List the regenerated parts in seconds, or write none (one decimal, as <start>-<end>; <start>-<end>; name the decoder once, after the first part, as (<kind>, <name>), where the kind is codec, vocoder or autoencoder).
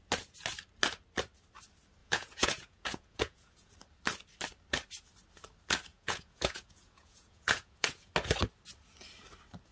2.0-3.7 (vocoder, Vocos); 5.9-8.1